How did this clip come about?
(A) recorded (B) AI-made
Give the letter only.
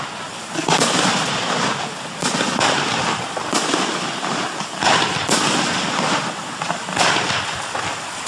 A